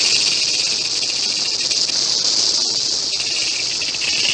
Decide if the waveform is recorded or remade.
recorded